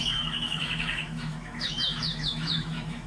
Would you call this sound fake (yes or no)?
yes